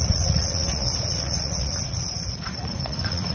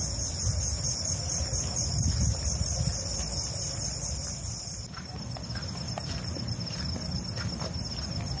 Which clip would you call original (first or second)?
second